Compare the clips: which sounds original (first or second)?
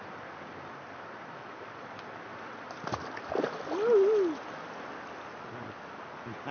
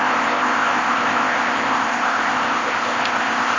first